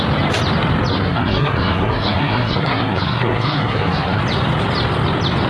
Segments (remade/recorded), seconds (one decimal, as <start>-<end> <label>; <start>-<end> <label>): 0.0-0.9 recorded; 0.9-4.2 remade; 4.2-5.5 recorded